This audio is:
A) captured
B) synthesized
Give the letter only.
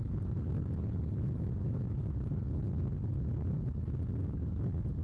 B